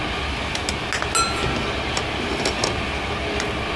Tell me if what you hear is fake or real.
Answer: real